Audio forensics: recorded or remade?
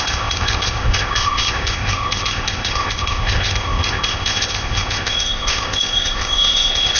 remade